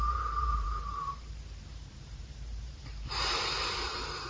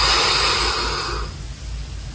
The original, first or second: second